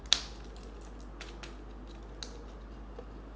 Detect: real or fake real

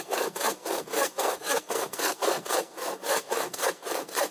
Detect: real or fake fake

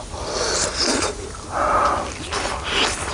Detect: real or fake real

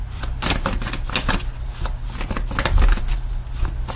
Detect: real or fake real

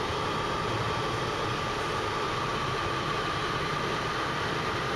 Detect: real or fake real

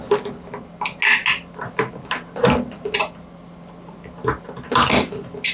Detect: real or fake real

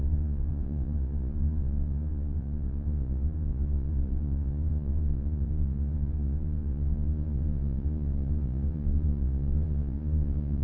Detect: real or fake fake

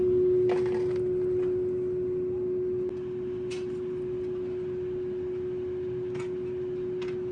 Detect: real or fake real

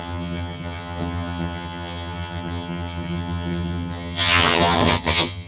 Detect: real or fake fake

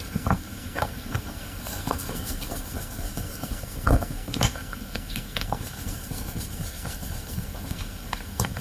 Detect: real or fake fake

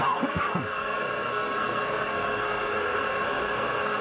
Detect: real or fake fake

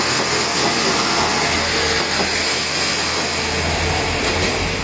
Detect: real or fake real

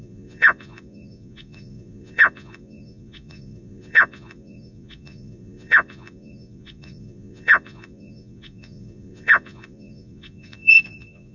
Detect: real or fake fake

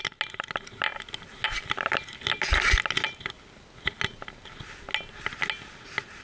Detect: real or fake real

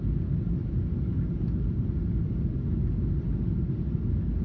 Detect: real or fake real